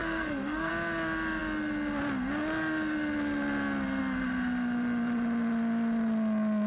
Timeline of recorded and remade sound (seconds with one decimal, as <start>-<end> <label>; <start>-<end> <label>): 0.0-0.7 remade; 0.7-6.7 recorded